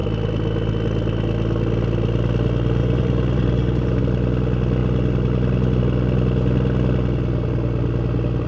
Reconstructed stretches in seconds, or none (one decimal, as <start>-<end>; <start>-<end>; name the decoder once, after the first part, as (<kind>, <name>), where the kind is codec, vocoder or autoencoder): 2.8-4.0 (vocoder, BigVGAN v2)